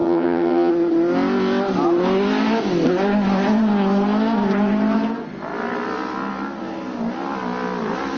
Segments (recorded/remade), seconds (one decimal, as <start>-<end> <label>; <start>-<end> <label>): 0.0-0.7 remade; 0.7-8.2 recorded